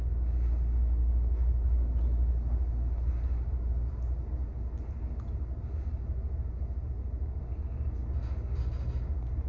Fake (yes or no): no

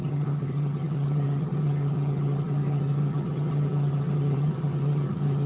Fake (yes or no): yes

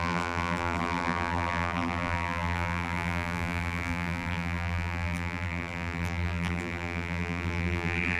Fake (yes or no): yes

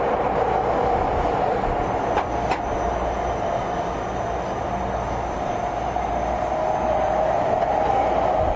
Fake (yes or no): no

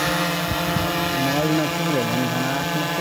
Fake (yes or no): no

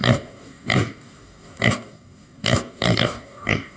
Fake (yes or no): yes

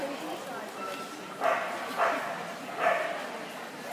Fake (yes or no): no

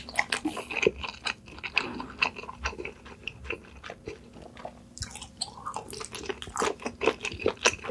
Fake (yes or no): no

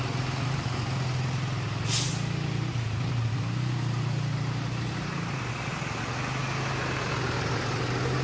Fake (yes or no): no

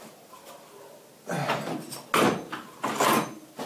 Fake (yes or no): no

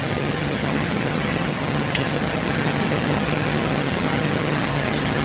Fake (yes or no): yes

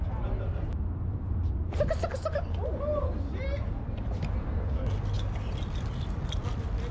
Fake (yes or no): no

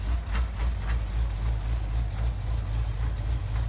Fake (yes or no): no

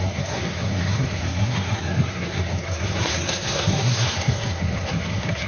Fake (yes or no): yes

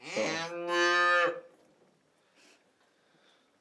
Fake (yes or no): no